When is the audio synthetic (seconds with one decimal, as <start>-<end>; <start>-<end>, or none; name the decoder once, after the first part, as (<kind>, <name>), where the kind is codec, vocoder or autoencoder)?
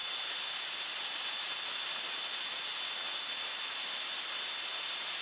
0.0-3.1 (vocoder, BigVGAN v2)